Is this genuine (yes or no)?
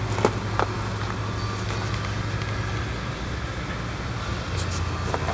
yes